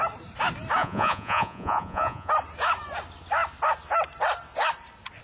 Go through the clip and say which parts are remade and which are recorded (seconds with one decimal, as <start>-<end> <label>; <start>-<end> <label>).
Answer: 0.0-0.8 recorded; 0.8-2.3 remade; 2.3-5.2 recorded